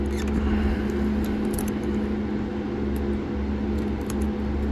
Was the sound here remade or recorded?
recorded